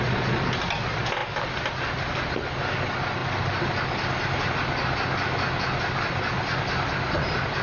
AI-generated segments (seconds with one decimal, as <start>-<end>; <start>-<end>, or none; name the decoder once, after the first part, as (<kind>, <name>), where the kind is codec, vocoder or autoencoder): none